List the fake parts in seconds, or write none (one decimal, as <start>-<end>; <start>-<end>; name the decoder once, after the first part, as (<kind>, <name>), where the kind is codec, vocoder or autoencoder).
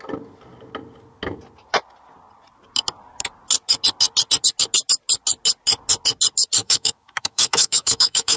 6.6-8.4 (autoencoder, DAC-VAE)